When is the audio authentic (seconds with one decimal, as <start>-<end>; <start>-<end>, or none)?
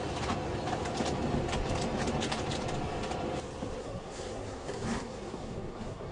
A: 0.0-3.8